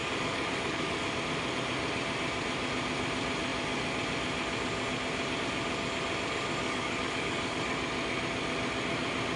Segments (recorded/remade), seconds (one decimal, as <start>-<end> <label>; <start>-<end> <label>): 0.0-1.0 remade; 1.0-6.6 recorded; 6.6-7.6 remade; 7.6-9.4 recorded